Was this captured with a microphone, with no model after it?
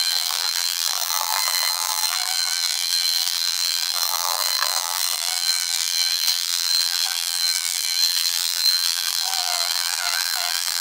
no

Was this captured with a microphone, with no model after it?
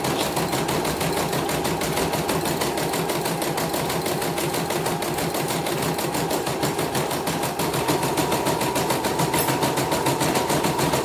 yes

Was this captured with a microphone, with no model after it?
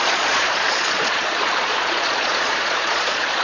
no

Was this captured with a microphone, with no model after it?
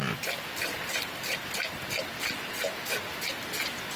yes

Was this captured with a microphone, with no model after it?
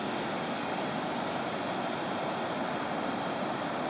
yes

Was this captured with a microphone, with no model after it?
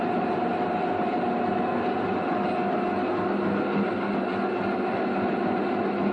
yes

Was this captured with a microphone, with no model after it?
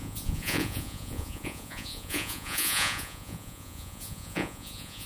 no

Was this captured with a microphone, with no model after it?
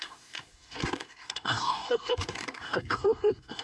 no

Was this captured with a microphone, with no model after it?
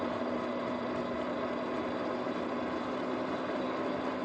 yes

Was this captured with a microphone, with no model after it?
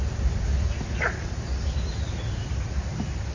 yes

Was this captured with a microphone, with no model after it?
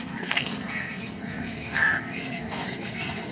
no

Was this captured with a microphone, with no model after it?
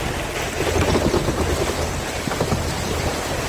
yes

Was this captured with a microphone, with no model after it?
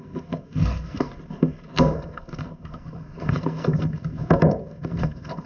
no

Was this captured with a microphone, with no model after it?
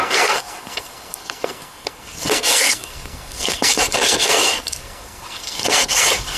no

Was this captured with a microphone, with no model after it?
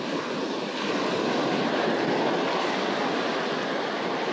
yes